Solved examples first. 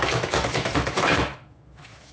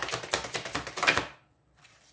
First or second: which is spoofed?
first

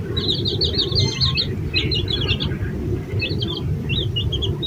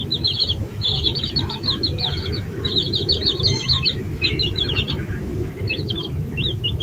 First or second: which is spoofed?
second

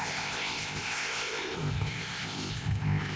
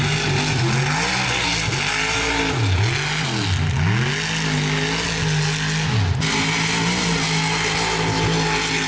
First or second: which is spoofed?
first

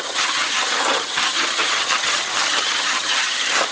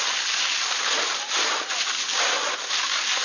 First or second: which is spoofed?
first